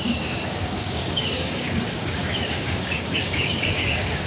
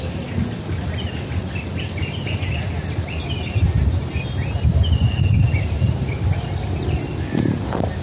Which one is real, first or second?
second